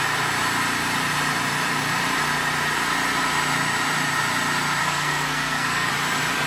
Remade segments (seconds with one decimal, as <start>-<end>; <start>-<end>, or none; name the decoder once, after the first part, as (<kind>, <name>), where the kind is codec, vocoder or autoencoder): 4.8-5.9 (codec, SNAC)